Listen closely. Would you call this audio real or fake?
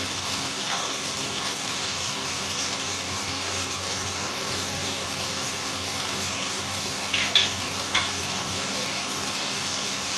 fake